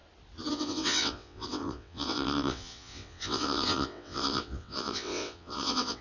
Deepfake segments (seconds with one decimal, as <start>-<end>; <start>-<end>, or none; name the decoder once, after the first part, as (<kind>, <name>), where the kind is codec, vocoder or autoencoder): 0.5-6.0 (vocoder, WaveNeXt)